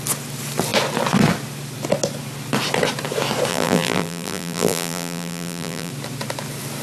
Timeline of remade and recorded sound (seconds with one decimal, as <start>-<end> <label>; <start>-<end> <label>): 0.0-3.5 recorded; 3.5-5.9 remade; 5.9-6.8 recorded